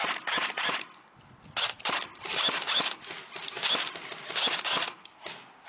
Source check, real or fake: real